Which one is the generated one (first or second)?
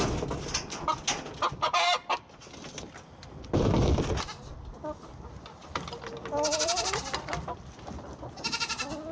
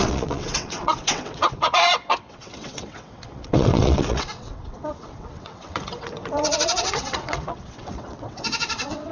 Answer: second